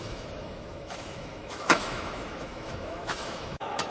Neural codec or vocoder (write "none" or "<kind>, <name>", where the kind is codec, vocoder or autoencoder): autoencoder, DAC-VAE